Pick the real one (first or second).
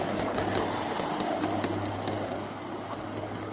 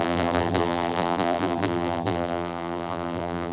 first